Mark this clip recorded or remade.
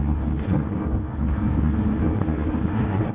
remade